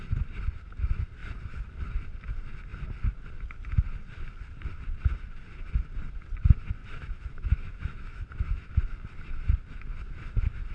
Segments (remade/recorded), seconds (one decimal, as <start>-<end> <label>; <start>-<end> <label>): 0.0-6.8 recorded; 6.8-8.7 remade; 8.7-10.7 recorded